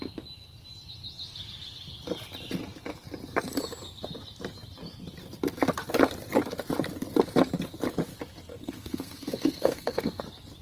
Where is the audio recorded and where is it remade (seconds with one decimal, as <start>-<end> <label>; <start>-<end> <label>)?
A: 0.0-8.5 recorded; 8.5-10.2 remade; 10.2-10.6 recorded